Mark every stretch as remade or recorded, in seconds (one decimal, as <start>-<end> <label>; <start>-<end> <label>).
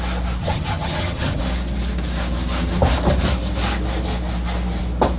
0.0-0.4 recorded; 0.4-1.4 remade; 1.4-5.2 recorded